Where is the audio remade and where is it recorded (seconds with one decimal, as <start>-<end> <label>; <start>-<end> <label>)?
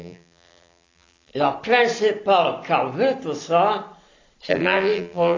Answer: 0.0-1.3 remade; 1.3-4.5 recorded; 4.5-5.4 remade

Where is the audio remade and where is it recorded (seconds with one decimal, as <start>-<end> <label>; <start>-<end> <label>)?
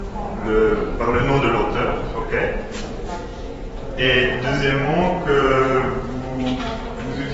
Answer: 0.0-0.6 recorded; 0.6-2.8 remade; 2.8-3.3 recorded; 3.3-6.4 remade; 6.4-7.3 recorded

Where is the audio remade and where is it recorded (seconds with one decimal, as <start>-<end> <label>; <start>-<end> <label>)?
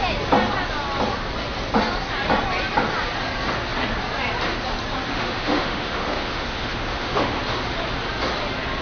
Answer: 0.0-5.1 recorded; 5.1-7.4 remade; 7.4-8.8 recorded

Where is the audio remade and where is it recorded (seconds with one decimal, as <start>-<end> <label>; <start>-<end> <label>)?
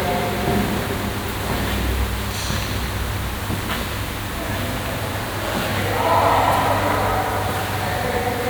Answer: 0.0-8.5 recorded